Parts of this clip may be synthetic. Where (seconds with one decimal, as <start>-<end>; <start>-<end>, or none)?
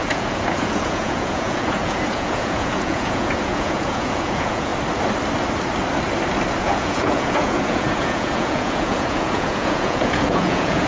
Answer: 0.0-4.7; 6.6-10.9